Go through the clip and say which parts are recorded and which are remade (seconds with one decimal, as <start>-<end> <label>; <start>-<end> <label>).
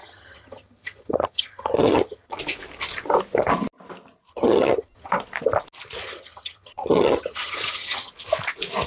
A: 0.0-2.4 remade; 2.4-4.3 recorded; 4.3-5.1 remade; 5.1-6.0 recorded; 6.0-8.1 remade; 8.1-8.9 recorded